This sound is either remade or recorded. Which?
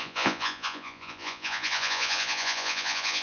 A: remade